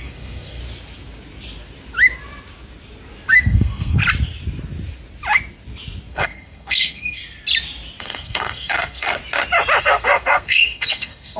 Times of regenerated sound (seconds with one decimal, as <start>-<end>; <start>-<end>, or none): 0.0-0.6; 3.3-4.0; 6.1-7.2; 8.0-9.2; 9.8-11.4